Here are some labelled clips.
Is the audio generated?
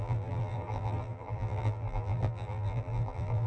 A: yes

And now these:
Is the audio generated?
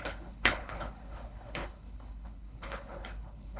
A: yes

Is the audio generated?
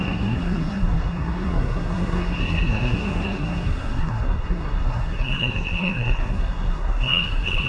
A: yes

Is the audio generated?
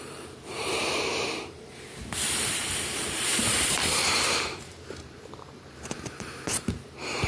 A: yes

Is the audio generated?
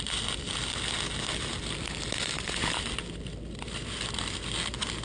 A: no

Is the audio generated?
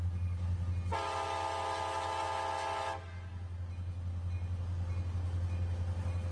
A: no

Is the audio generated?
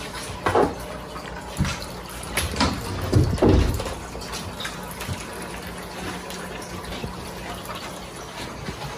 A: no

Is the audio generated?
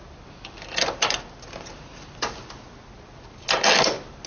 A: no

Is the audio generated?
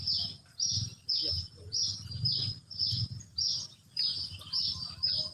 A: no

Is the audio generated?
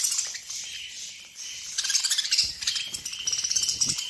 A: yes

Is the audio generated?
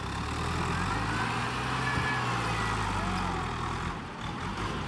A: no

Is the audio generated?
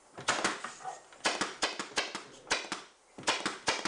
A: no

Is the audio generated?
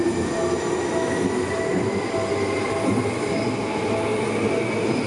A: no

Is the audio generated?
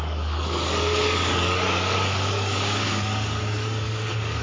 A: yes